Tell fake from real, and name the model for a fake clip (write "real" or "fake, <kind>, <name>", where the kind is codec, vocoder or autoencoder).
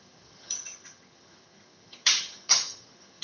fake, vocoder, HiFi-GAN